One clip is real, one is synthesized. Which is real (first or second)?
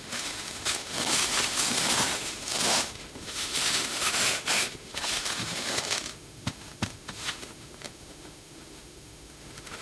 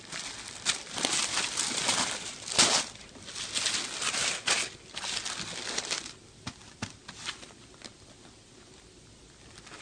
second